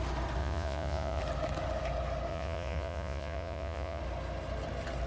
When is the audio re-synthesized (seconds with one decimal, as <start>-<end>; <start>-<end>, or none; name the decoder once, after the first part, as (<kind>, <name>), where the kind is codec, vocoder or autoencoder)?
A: 0.4-1.2 (vocoder, Vocos); 2.3-4.0